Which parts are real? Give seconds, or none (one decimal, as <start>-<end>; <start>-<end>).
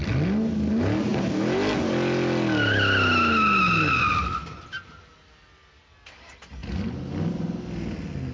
0.0-8.3